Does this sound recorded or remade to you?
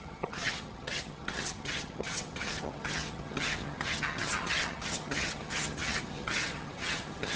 remade